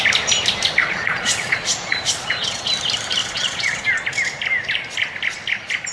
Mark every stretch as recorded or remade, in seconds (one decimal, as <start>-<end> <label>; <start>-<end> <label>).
0.0-0.8 recorded; 0.8-2.7 remade; 2.7-3.2 recorded; 3.2-3.8 remade; 3.8-5.9 recorded